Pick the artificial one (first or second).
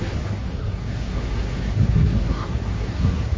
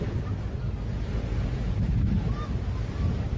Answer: first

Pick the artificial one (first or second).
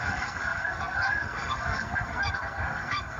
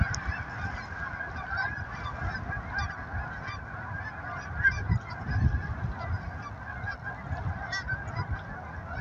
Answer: first